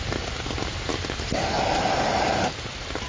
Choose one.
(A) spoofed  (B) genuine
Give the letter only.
B